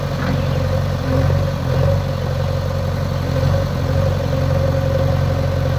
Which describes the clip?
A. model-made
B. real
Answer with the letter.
B